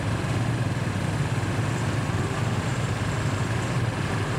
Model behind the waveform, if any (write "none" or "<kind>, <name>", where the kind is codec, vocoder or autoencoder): vocoder, BigVGAN v2